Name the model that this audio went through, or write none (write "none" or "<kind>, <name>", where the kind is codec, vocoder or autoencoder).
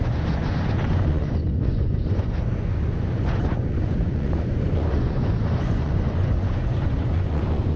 vocoder, Vocos